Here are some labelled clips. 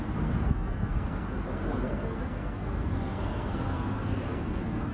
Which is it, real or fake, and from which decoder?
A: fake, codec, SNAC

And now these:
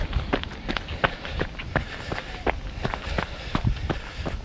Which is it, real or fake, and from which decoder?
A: real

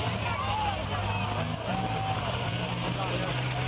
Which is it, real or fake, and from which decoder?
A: real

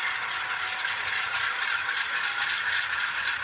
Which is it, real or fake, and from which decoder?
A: real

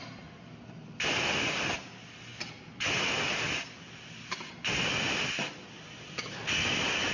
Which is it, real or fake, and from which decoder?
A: real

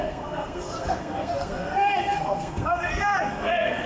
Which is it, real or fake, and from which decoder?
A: fake, codec, SNAC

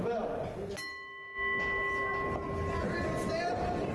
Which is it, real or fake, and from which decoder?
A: real